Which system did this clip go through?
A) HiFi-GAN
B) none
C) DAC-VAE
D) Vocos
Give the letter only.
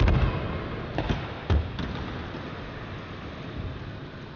B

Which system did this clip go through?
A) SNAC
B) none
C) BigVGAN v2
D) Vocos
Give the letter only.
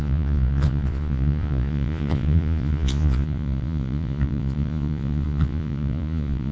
D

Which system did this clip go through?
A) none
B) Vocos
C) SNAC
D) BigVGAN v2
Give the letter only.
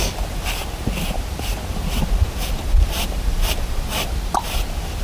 D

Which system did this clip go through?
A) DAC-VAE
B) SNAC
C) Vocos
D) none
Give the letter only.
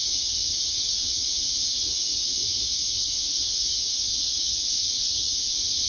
A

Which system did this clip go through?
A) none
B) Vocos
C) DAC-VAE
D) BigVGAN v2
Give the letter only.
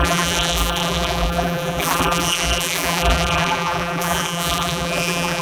D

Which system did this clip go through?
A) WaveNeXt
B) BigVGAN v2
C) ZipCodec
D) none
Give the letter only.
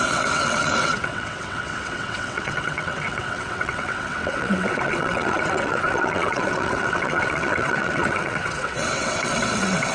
A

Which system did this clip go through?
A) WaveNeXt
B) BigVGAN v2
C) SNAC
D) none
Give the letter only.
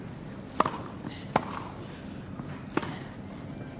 D